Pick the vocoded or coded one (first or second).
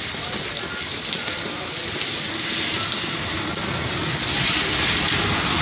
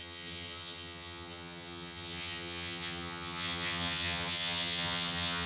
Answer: second